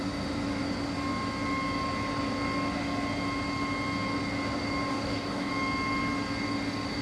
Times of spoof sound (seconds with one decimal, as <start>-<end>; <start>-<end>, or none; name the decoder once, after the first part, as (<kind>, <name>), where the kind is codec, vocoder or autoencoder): 4.9-5.5 (codec, DAC)